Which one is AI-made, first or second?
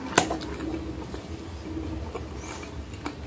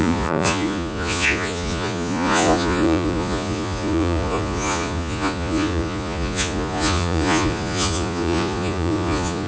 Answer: second